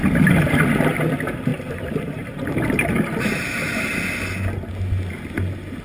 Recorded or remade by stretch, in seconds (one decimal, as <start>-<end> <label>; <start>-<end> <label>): 0.0-1.5 recorded; 1.5-3.8 remade; 3.8-5.8 recorded